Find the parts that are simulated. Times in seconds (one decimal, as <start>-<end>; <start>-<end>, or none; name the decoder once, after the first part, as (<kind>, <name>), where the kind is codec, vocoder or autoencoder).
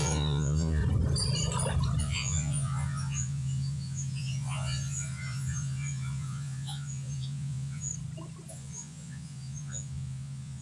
0.0-0.8 (vocoder, Vocos); 2.0-7.9; 8.5-10.6